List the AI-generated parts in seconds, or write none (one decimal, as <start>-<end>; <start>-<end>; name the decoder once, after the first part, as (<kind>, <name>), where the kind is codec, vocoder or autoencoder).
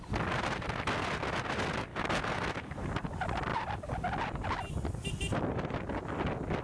none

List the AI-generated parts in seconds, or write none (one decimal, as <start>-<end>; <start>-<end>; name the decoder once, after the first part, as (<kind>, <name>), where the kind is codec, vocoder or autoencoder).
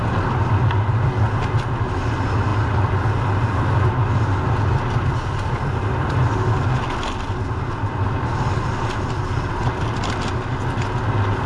none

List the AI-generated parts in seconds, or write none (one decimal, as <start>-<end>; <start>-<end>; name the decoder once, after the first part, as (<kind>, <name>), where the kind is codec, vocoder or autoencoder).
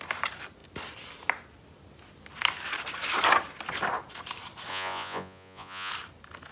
4.7-5.9 (vocoder, Vocos)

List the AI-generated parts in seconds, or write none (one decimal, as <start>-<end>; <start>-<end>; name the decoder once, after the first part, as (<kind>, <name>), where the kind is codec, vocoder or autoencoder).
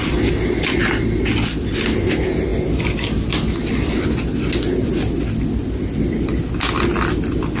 none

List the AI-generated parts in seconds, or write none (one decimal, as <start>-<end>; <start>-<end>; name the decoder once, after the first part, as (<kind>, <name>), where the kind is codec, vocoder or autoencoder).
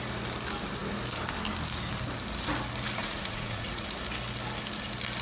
3.0-3.9 (vocoder, Vocos)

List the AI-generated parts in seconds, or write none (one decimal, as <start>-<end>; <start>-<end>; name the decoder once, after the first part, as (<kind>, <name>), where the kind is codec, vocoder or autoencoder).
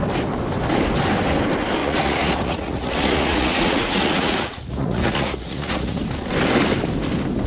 1.8-6.0 (vocoder, Vocos)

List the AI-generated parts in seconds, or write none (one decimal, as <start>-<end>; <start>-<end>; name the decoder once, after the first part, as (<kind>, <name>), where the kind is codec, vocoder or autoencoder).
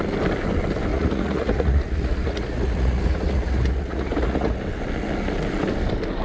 0.9-4.6 (vocoder, Vocos)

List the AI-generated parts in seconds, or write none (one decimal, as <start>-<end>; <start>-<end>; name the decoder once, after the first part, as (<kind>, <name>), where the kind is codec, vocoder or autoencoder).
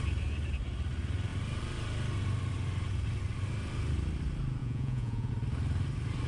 4.6-5.3 (vocoder, Vocos)